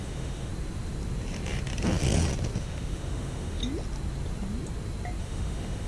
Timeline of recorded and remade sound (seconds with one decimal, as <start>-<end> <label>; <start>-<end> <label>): 0.0-0.5 remade; 0.5-2.6 recorded; 2.6-3.6 remade; 3.6-5.2 recorded; 5.2-5.9 remade